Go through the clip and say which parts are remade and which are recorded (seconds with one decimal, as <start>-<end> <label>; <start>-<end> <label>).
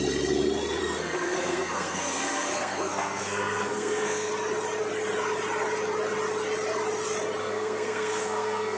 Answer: 0.0-0.8 recorded; 0.8-4.3 remade; 4.3-7.4 recorded; 7.4-8.8 remade